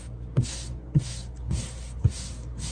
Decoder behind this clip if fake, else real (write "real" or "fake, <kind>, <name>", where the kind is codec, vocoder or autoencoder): fake, codec, SNAC